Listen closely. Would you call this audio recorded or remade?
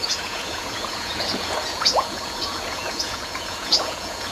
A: remade